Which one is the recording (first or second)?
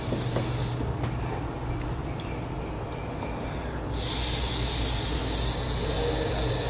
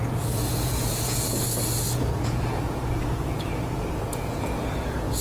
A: first